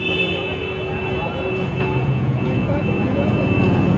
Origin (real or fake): fake